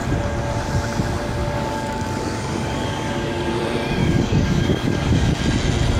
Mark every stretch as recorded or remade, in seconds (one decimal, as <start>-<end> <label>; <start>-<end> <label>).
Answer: 0.0-1.4 recorded; 1.4-3.5 remade; 3.5-4.0 recorded; 4.0-5.3 remade; 5.3-6.0 recorded